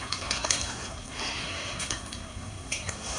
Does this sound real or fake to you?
fake